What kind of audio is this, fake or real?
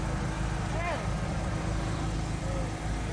real